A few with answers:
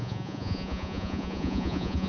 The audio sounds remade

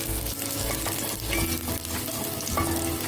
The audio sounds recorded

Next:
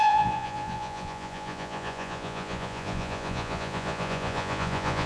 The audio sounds remade